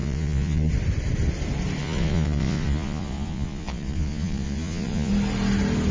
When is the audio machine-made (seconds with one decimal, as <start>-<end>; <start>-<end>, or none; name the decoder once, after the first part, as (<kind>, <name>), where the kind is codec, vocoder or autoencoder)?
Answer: 0.0-0.7 (vocoder, Vocos); 1.8-5.1